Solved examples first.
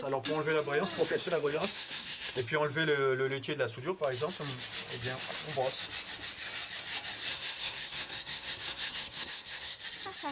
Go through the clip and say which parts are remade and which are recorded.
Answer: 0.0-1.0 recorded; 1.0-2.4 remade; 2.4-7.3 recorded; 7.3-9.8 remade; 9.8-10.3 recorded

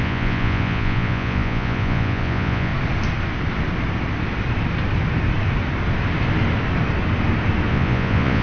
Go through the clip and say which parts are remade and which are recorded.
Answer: 0.0-2.7 remade; 2.7-7.7 recorded; 7.7-8.4 remade

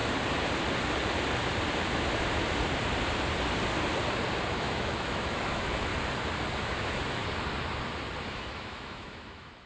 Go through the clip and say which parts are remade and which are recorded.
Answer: 0.0-4.6 recorded; 4.6-5.9 remade; 5.9-6.6 recorded; 6.6-7.2 remade; 7.2-8.3 recorded; 8.3-9.7 remade

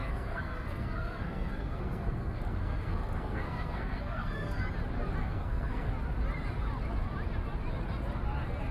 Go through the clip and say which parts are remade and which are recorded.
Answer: 0.0-4.6 remade; 4.6-5.2 recorded; 5.2-5.9 remade; 5.9-8.7 recorded

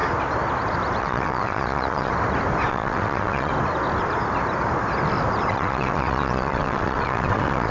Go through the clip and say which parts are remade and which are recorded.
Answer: 0.0-1.0 recorded; 1.0-2.1 remade; 2.1-2.7 recorded; 2.7-3.5 remade; 3.5-5.5 recorded; 5.5-7.7 remade

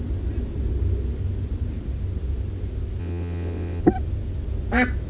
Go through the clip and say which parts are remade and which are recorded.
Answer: 0.0-3.0 recorded; 3.0-3.8 remade; 3.8-5.1 recorded